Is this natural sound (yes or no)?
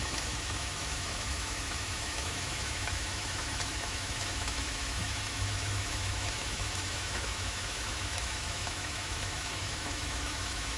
no